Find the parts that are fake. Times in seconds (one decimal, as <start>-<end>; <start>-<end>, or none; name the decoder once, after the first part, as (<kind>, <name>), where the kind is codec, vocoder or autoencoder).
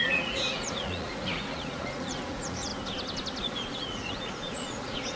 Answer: 0.0-2.7 (vocoder, Vocos); 3.4-5.2